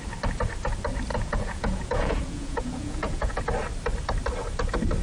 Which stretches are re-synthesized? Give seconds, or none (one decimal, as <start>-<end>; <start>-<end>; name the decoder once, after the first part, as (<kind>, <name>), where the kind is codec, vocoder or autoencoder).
1.1-3.4 (vocoder, Vocos)